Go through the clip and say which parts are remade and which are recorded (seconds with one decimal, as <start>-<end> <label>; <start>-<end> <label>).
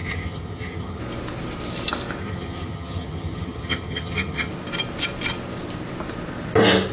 0.0-1.0 remade; 1.0-2.2 recorded; 2.2-4.5 remade; 4.5-6.9 recorded